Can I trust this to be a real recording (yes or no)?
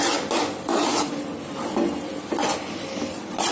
yes